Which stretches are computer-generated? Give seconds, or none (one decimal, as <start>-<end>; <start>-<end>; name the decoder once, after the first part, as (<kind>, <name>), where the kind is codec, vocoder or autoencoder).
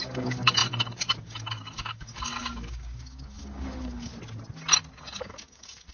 0.0-4.1 (codec, DAC); 5.0-5.9